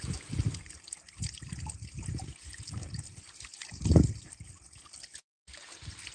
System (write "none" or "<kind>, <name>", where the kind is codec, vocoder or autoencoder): none